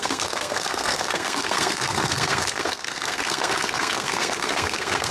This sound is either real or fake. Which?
fake